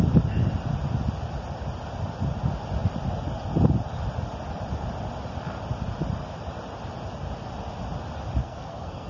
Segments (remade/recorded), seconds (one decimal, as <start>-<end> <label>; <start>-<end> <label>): 0.0-8.4 recorded; 8.4-9.1 remade